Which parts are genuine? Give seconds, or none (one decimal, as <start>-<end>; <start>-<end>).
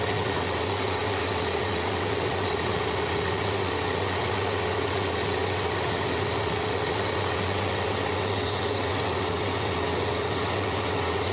none